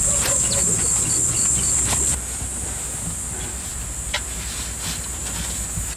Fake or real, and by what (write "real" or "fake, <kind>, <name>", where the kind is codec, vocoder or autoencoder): real